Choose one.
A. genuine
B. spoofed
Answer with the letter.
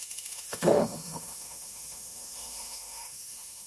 B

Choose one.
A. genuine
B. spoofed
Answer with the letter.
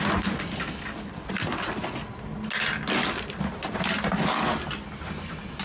A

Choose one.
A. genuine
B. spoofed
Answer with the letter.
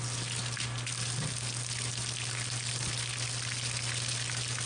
A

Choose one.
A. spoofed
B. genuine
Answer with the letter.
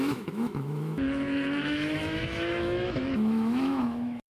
A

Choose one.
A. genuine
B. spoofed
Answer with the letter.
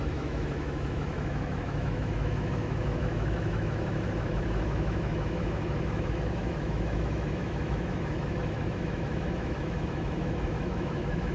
B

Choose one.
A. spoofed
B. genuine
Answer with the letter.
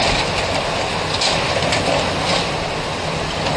B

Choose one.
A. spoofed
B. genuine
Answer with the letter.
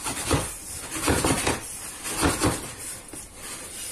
B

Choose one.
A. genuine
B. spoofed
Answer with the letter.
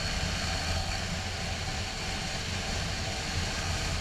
A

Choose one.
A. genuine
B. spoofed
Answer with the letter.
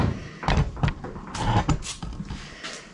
A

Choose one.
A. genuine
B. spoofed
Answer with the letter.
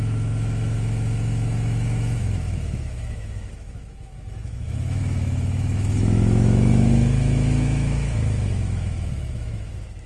B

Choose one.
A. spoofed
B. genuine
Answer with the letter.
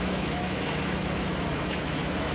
A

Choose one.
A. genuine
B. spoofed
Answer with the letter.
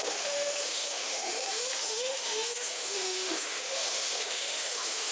B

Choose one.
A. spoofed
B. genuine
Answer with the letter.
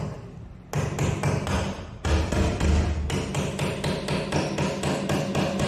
B